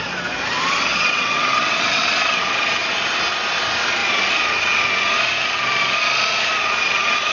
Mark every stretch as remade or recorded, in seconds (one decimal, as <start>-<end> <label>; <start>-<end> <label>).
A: 0.0-0.9 recorded; 0.9-2.4 remade; 2.4-7.3 recorded